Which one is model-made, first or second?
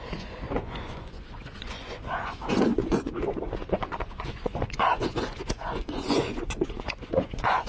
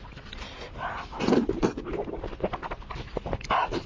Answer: first